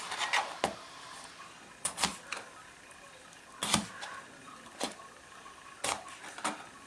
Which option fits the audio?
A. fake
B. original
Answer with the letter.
B